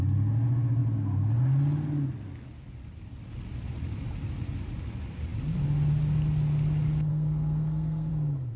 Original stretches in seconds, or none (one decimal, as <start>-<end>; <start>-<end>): 0.0-7.1; 8.1-8.6